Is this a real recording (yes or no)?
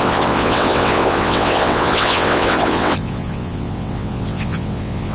no